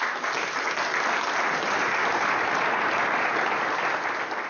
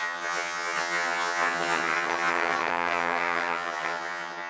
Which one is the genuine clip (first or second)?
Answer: first